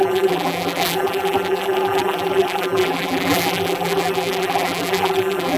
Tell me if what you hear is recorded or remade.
remade